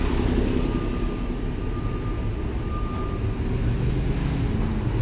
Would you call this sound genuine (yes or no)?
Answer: yes